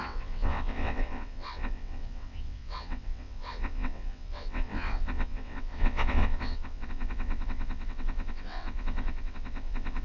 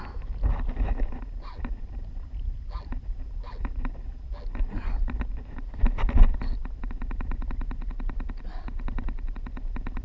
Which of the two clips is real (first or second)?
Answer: second